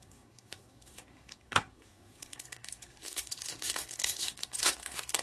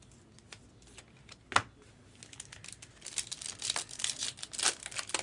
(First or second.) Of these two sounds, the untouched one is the second